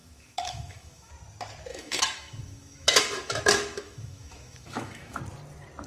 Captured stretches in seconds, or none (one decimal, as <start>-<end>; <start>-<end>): 1.1-1.7; 5.2-5.9